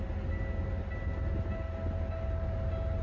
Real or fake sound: real